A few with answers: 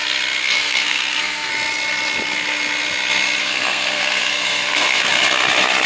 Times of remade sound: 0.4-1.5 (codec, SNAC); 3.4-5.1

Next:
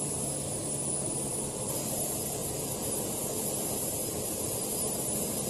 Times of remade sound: none

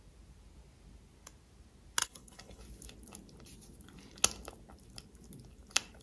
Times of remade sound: 2.0-2.6 (codec, HILCodec)

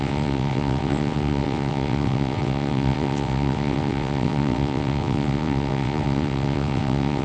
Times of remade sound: 0.0-7.2 (vocoder, WaveNeXt)

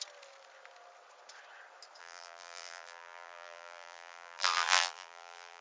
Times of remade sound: 2.0-5.6 (vocoder, BigVGAN v2)

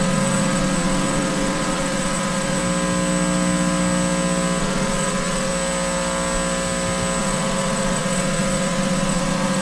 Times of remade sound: 0.0-2.6 (vocoder, Vocos); 4.6-5.5; 7.2-9.6

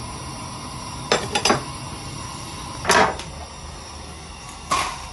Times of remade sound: 2.3-3.4 (vocoder, BigVGAN v2)

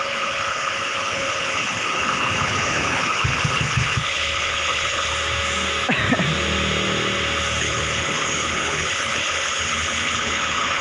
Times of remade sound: 0.0-5.1 (codec, HILCodec); 7.6-10.8